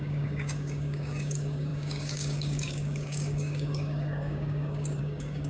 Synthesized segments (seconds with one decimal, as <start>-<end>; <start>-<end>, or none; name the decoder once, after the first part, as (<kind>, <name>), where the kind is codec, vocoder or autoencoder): 0.0-5.5 (codec, DAC)